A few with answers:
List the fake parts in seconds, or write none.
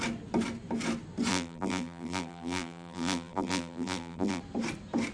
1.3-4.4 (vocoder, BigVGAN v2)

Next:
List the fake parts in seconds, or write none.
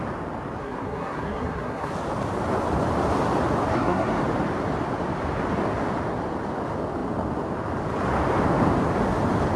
0.6-1.9 (codec, SNAC); 3.7-4.2